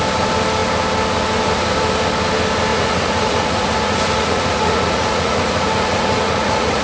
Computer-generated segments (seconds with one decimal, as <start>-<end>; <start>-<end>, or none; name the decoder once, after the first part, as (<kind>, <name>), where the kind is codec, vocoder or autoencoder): 2.7-6.8 (vocoder, Vocos)